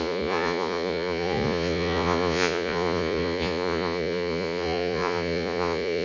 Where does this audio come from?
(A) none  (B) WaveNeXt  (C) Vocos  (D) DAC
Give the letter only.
C